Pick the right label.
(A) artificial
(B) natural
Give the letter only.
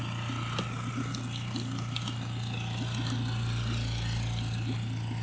B